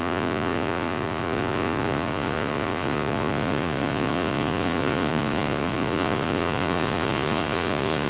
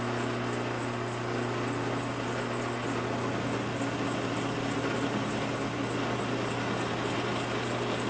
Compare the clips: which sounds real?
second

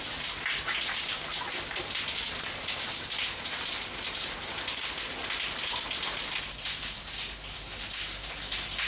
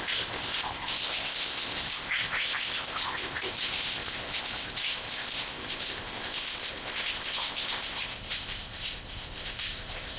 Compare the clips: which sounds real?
first